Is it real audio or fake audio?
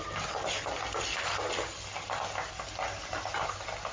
real